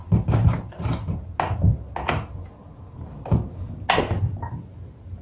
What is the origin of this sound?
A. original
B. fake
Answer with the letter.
A